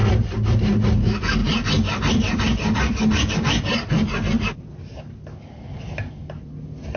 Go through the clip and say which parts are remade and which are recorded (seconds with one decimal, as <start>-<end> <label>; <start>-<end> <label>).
0.0-1.4 recorded; 1.4-3.3 remade; 3.3-7.0 recorded